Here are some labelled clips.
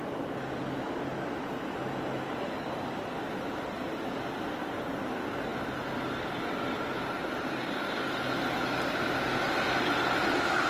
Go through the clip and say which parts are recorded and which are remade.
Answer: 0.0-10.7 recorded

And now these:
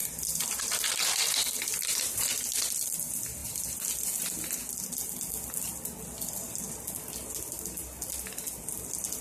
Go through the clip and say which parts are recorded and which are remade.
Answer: 0.0-2.4 remade; 2.4-9.2 recorded

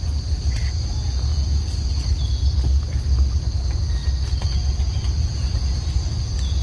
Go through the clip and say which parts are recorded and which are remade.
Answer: 0.0-6.6 recorded

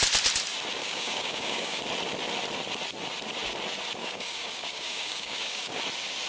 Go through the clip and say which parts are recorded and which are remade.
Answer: 0.0-0.8 recorded; 0.8-1.8 remade; 1.8-4.0 recorded; 4.0-5.8 remade; 5.8-6.3 recorded